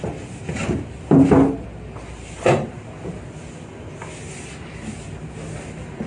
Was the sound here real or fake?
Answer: real